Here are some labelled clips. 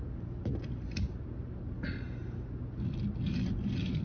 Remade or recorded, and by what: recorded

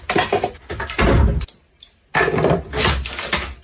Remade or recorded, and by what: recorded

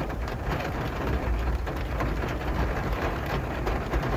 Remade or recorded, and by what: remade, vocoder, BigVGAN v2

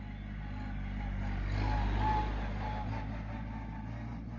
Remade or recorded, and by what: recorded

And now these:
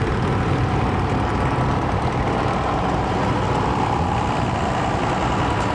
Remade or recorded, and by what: recorded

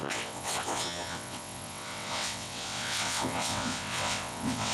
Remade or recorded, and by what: remade, vocoder, WaveNeXt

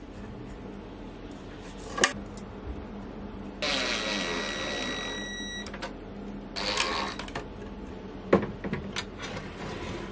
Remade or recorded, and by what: recorded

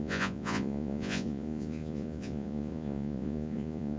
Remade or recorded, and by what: remade, vocoder, Vocos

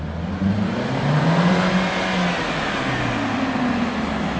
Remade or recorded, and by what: recorded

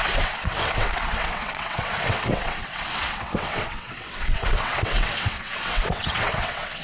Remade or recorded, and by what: remade, vocoder, WaveNeXt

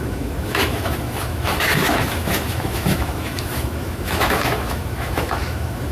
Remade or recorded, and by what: remade, autoencoder, DAC-VAE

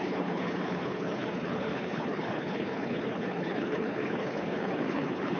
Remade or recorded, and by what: remade, codec, HILCodec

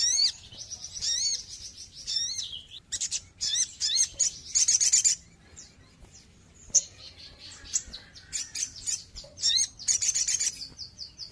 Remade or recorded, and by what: remade, vocoder, BigVGAN v2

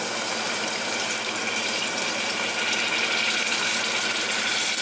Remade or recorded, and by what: recorded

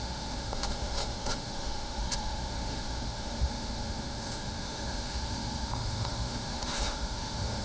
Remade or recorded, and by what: remade, autoencoder, DAC-VAE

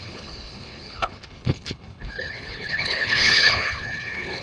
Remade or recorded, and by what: remade, codec, HILCodec